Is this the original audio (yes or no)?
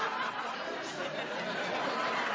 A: yes